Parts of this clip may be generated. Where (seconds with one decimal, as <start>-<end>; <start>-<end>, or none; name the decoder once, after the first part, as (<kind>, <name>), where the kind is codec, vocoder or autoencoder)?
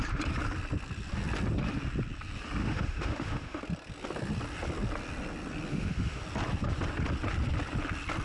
2.6-3.6 (autoencoder, DAC-VAE); 5.7-6.2